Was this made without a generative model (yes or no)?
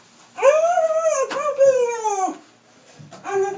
yes